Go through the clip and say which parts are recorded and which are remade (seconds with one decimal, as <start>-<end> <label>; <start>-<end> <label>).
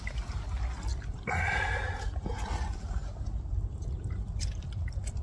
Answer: 0.0-5.2 recorded